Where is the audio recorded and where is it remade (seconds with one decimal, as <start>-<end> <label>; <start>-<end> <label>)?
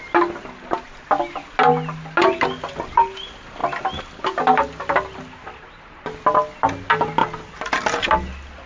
0.0-8.7 recorded